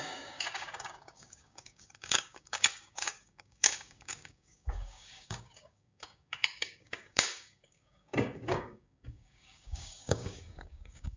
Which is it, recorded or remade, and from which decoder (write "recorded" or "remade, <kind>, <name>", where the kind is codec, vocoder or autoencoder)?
remade, codec, DAC